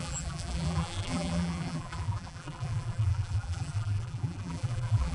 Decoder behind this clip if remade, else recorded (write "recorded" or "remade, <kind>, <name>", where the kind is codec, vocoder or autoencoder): remade, vocoder, BigVGAN v2